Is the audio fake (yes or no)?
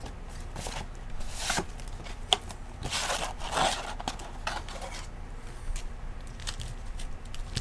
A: no